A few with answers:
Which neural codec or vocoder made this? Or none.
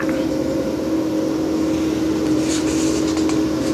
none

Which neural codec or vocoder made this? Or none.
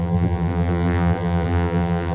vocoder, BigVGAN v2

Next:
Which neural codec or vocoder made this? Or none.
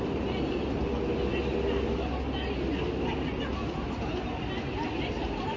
none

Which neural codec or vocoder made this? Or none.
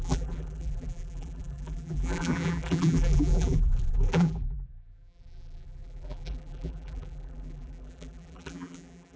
vocoder, BigVGAN v2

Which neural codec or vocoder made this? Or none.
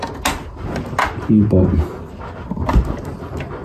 none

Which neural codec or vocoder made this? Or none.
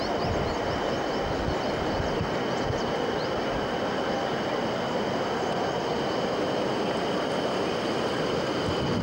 none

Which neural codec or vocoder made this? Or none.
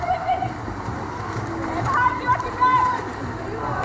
vocoder, BigVGAN v2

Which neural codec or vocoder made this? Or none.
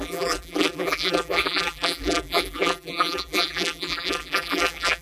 vocoder, BigVGAN v2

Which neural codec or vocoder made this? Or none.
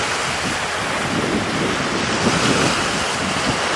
none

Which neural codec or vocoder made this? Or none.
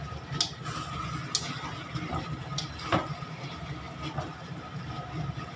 none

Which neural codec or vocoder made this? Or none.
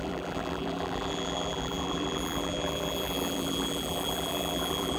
vocoder, BigVGAN v2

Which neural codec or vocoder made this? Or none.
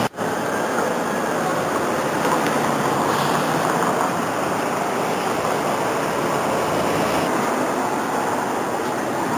none